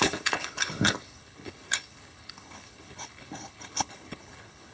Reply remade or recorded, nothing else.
remade